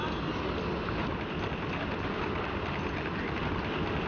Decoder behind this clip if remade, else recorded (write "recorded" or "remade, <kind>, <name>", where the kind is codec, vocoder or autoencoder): recorded